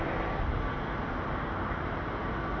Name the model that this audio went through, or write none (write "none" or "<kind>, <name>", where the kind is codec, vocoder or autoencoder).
none